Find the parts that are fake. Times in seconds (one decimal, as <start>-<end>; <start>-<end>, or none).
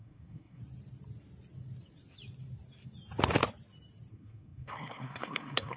0.0-0.6; 4.1-5.8